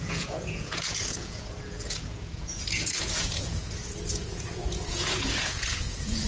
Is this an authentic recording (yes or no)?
no